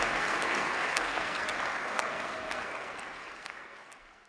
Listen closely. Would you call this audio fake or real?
fake